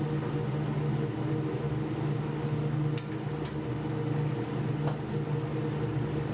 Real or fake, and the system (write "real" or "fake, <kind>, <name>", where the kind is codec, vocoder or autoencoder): real